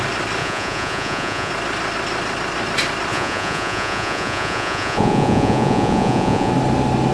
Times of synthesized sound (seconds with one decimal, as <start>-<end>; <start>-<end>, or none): 0.4-1.5; 3.1-6.5